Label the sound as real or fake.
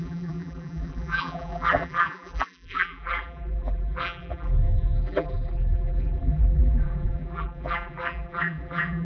fake